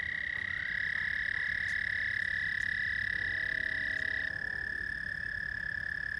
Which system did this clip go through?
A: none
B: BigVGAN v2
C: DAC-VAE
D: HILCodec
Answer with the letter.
A